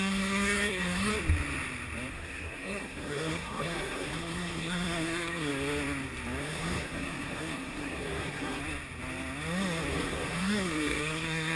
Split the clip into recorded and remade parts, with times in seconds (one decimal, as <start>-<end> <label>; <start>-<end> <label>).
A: 0.0-1.1 remade; 1.1-2.1 recorded; 2.1-5.5 remade; 5.5-6.4 recorded; 6.4-8.6 remade; 8.6-9.9 recorded; 9.9-11.6 remade